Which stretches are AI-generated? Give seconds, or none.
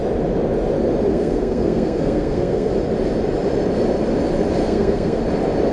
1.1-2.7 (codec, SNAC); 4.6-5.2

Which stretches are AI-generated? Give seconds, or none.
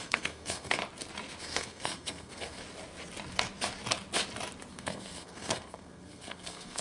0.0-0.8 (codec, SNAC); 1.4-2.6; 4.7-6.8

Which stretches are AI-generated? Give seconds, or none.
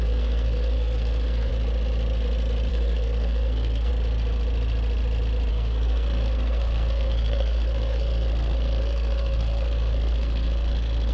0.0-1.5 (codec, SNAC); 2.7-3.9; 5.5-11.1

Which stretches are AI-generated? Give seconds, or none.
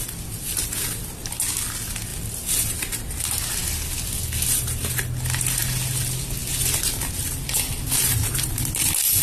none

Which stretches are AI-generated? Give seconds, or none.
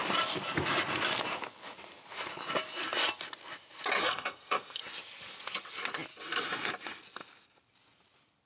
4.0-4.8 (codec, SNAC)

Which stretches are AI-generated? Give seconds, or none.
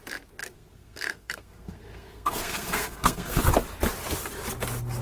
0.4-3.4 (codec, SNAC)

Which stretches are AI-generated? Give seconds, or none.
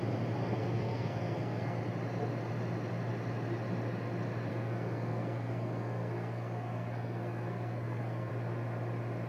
0.4-1.8 (codec, SNAC); 4.5-8.3